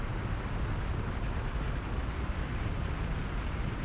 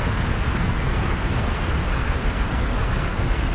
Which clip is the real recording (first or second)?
first